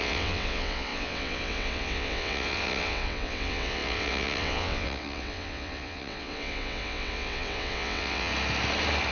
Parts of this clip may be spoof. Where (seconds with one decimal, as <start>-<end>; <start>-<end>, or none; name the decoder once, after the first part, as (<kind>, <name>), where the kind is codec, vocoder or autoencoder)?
0.0-8.3 (vocoder, WaveNeXt)